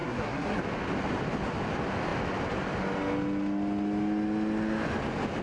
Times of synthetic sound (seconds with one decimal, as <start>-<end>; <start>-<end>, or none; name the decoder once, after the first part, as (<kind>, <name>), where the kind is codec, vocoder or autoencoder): 0.0-0.6 (codec, SNAC)